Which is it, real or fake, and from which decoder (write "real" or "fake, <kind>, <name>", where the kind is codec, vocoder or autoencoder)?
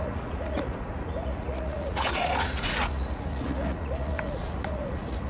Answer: fake, vocoder, Vocos